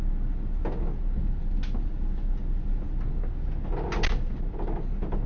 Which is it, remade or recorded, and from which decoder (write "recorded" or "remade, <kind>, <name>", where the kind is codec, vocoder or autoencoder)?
recorded